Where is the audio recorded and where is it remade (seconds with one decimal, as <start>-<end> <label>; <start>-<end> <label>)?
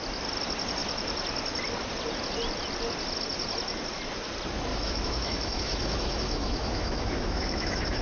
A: 0.0-4.7 recorded; 4.7-8.0 remade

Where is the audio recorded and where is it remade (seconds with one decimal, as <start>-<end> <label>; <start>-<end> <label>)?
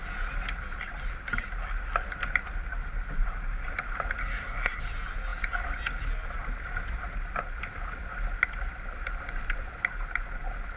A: 0.0-4.2 recorded; 4.2-4.8 remade; 4.8-10.8 recorded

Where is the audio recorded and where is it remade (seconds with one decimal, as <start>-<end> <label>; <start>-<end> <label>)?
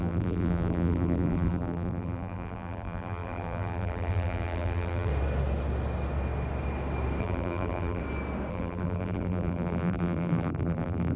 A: 0.0-5.1 remade; 5.1-7.2 recorded; 7.2-8.0 remade; 8.0-8.5 recorded; 8.5-11.2 remade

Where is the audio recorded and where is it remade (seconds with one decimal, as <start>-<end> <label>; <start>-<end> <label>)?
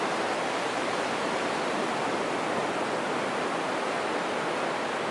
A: 0.0-5.1 recorded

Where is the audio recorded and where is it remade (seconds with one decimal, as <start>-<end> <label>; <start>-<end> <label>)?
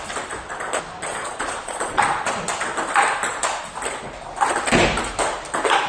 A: 0.0-1.1 recorded; 1.1-2.0 remade; 2.0-5.9 recorded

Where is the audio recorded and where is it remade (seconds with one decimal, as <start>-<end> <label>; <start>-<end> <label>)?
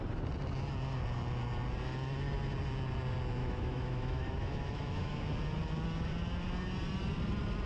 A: 0.0-3.4 recorded; 3.4-5.1 remade; 5.1-7.7 recorded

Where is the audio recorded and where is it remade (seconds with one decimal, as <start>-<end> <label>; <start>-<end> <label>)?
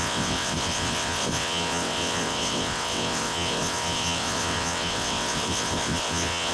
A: 0.0-6.5 remade